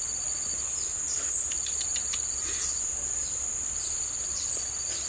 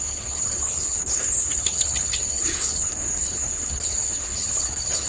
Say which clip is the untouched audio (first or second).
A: first